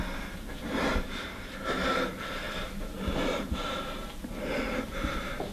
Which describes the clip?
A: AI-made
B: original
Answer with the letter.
A